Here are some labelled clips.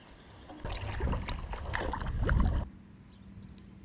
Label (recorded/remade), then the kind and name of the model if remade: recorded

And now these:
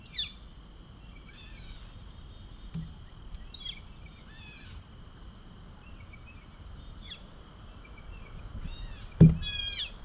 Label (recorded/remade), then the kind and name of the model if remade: recorded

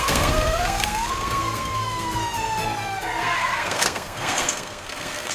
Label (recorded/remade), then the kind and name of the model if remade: remade, codec, SNAC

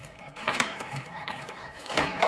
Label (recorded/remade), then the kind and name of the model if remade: remade, codec, SNAC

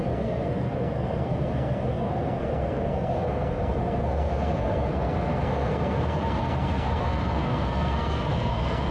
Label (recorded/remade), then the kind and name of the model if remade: remade, codec, SNAC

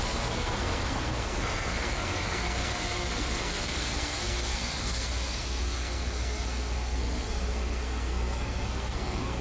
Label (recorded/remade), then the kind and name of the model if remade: remade, codec, SNAC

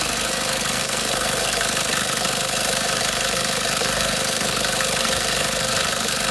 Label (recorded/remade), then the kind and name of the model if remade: remade, codec, SNAC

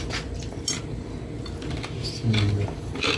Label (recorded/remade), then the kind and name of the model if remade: recorded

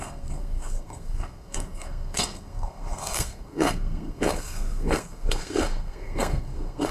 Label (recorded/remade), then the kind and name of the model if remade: remade, codec, SNAC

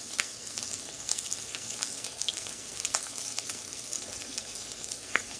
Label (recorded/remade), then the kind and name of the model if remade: remade, codec, SNAC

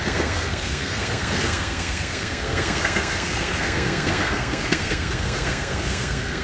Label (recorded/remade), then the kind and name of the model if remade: remade, codec, SNAC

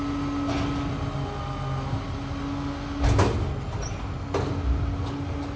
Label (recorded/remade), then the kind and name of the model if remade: recorded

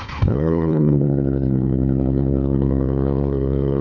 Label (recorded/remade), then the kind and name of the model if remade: remade, codec, SNAC